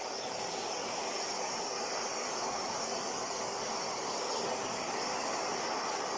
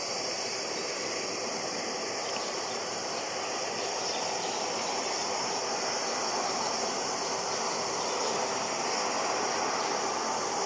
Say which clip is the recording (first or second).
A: second